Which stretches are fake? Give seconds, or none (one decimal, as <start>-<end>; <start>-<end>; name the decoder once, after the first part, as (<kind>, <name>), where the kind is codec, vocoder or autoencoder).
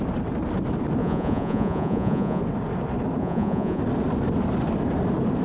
1.0-2.4 (vocoder, Vocos); 3.2-3.8